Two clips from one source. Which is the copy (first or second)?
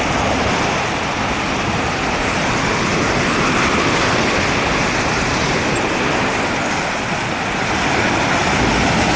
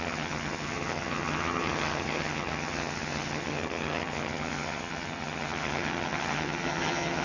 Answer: second